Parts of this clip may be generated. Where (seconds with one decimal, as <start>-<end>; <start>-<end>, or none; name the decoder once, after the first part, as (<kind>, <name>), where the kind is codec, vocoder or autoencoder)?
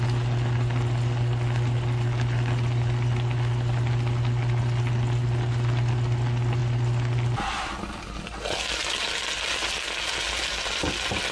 none